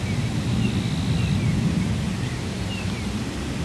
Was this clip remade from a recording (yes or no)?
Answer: no